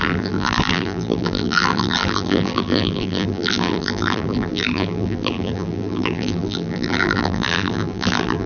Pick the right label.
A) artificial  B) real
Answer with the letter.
A